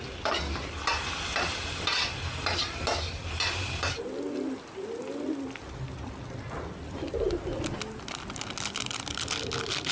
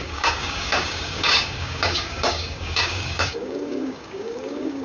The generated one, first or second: second